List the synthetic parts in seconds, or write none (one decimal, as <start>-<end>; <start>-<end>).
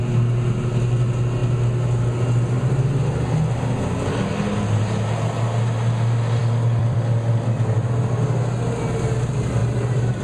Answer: 6.4-7.0; 9.6-10.2